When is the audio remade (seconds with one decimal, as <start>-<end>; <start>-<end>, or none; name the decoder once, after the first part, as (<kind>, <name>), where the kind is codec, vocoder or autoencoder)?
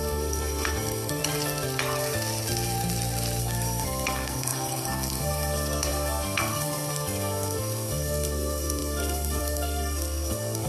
0.0-1.2 (codec, SNAC); 3.4-10.7